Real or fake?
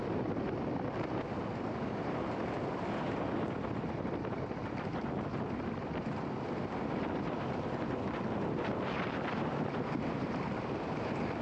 real